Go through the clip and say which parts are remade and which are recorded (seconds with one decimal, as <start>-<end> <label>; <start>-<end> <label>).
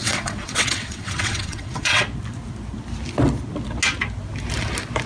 0.0-2.0 remade; 2.0-5.1 recorded